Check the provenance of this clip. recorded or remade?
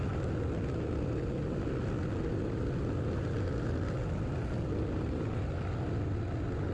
recorded